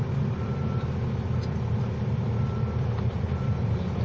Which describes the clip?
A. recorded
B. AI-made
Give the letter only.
A